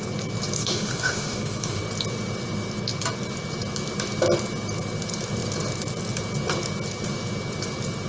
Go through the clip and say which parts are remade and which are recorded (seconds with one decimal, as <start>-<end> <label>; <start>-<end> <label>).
0.0-0.6 recorded; 0.6-1.8 remade; 1.8-8.1 recorded